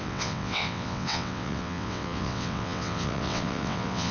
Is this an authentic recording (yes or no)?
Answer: no